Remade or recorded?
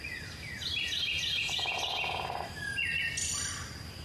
recorded